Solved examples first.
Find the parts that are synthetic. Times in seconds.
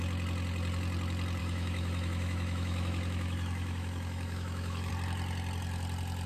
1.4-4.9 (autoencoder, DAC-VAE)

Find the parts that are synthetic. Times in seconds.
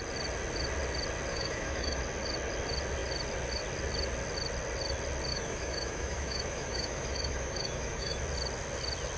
1.3-2.0 (autoencoder, DAC-VAE); 5.3-8.2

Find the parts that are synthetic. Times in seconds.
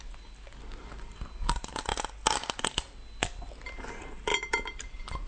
none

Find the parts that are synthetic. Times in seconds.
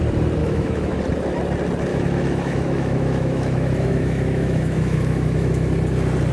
0.4-1.0 (autoencoder, DAC-VAE); 1.9-5.7